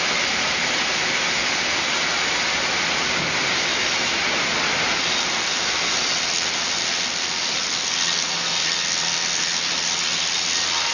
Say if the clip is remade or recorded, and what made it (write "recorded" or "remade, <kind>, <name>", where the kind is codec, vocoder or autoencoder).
recorded